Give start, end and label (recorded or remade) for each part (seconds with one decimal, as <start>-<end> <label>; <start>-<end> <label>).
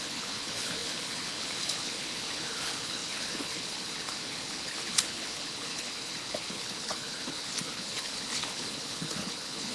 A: 0.0-9.7 remade